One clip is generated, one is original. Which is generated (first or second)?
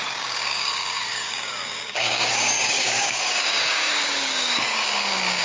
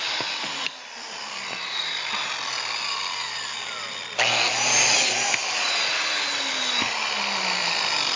first